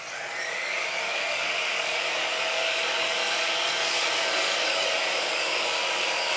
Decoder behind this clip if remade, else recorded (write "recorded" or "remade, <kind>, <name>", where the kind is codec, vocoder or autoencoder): remade, codec, DAC